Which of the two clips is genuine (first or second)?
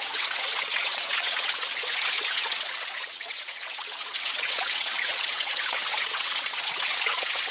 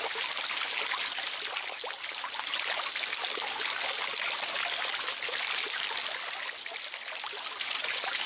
second